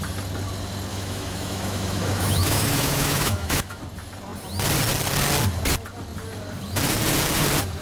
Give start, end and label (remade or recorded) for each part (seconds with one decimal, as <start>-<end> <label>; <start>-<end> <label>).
0.0-0.9 recorded; 0.9-3.8 remade; 3.8-7.8 recorded